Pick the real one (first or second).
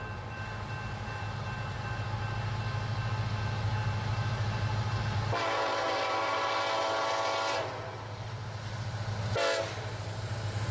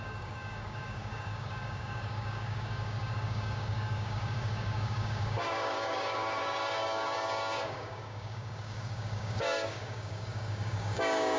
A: first